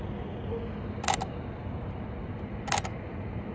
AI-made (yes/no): no